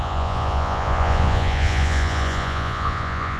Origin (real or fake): fake